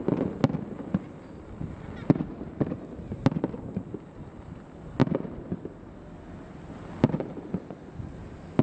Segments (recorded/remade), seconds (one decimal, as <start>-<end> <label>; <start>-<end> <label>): 0.0-8.6 recorded